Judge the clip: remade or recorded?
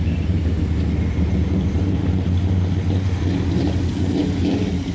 recorded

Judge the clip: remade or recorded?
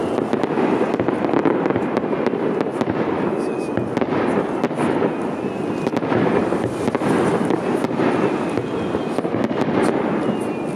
recorded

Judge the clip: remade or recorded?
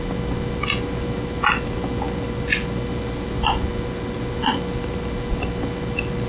recorded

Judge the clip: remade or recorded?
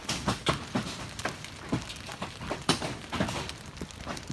recorded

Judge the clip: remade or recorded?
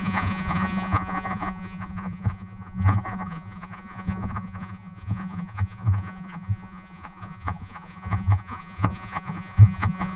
remade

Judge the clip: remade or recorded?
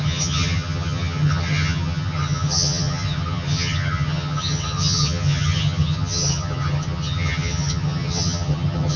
remade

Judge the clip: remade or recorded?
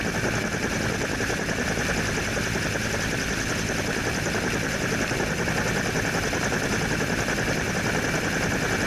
recorded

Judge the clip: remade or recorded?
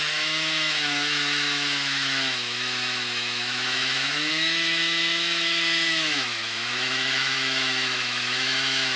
remade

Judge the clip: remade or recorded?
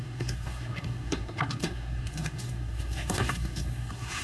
remade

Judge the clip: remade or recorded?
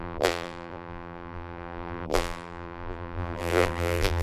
remade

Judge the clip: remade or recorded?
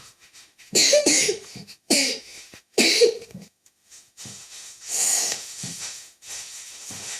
remade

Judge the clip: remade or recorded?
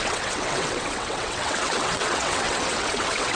remade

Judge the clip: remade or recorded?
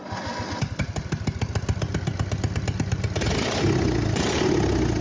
recorded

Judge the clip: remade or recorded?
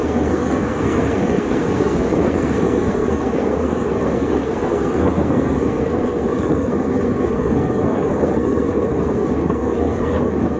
remade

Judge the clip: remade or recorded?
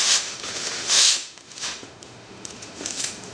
remade